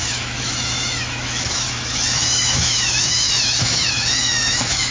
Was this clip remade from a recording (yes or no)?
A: yes